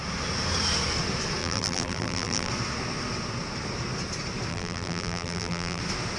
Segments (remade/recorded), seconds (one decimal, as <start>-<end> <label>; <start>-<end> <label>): 0.0-1.4 recorded; 1.4-2.5 remade; 2.5-4.5 recorded; 4.5-5.8 remade; 5.8-6.2 recorded